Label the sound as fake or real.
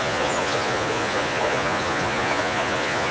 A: fake